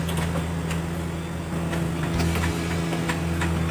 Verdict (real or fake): real